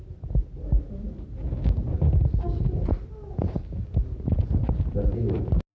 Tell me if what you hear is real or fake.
real